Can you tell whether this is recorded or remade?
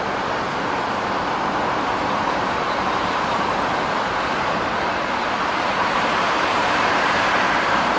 remade